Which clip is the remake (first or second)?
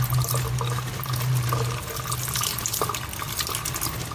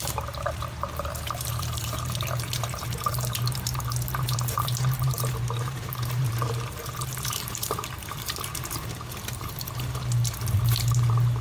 second